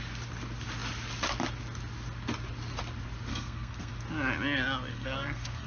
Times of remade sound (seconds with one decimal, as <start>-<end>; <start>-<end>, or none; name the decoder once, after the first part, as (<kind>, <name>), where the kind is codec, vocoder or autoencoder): 3.3-3.9 (codec, SNAC); 4.9-5.7